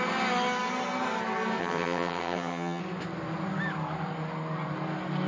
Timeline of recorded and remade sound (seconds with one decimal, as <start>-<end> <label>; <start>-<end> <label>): 0.0-1.6 recorded; 1.6-2.8 remade; 2.8-5.3 recorded